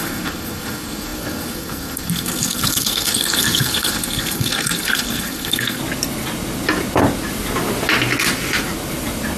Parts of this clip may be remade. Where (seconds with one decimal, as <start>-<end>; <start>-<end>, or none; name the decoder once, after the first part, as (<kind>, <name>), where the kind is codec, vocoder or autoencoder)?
0.0-5.8 (codec, SNAC)

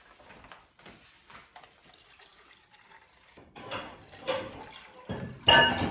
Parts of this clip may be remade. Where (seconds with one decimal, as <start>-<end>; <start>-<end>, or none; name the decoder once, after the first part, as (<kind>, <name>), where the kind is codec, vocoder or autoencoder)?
none